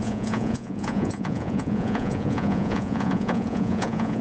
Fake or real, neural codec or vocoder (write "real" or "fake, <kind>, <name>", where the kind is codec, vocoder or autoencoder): fake, vocoder, Vocos